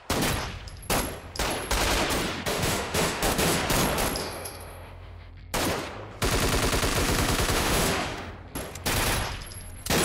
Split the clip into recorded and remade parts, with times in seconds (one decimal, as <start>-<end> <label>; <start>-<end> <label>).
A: 0.0-2.5 recorded; 2.5-3.6 remade; 3.6-4.2 recorded; 4.2-5.3 remade; 5.3-7.0 recorded; 7.0-8.3 remade; 8.3-10.0 recorded